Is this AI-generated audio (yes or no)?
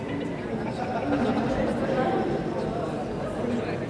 no